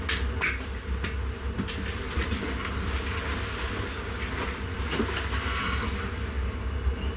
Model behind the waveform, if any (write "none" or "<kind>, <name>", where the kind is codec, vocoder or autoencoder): none